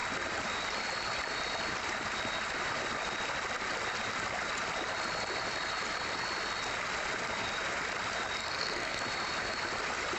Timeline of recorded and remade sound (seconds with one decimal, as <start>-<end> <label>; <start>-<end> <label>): 0.0-8.4 recorded; 8.4-9.0 remade; 9.0-10.2 recorded